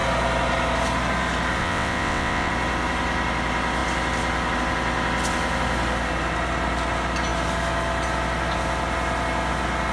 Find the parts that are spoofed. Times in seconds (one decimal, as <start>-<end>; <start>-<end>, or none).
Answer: 1.6-2.5